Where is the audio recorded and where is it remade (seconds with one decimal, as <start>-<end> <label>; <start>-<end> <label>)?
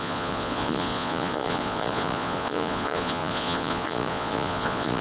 0.0-5.0 remade